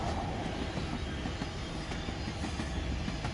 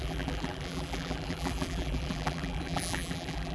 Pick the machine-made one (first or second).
second